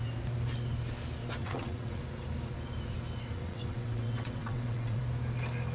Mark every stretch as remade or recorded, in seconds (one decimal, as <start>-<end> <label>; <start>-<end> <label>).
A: 0.0-1.4 recorded; 1.4-2.0 remade; 2.0-3.3 recorded; 3.3-5.0 remade; 5.0-5.7 recorded